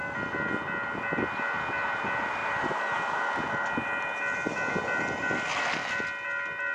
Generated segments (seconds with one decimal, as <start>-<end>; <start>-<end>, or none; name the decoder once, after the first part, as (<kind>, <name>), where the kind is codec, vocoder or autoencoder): none